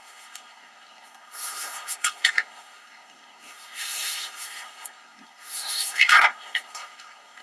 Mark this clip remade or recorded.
remade